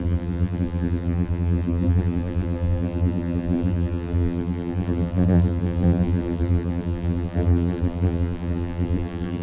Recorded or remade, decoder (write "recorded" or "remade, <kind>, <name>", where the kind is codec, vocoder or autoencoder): remade, vocoder, BigVGAN v2